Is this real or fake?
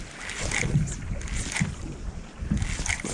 real